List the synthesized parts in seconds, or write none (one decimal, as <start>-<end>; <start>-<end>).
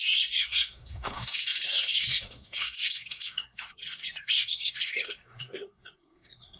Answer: 0.0-6.6